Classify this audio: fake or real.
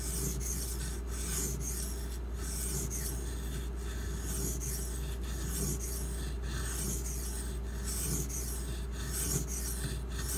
real